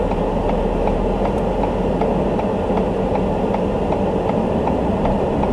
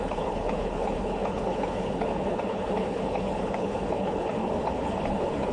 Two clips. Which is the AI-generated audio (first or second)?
second